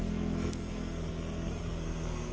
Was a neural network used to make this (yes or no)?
yes